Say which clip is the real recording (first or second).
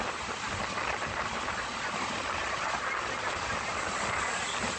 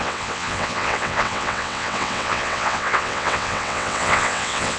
first